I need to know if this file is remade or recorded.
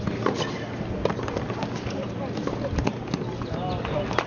recorded